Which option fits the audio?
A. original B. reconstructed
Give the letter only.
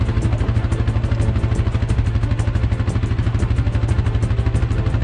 A